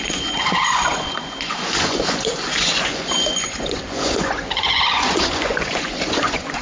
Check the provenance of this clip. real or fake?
fake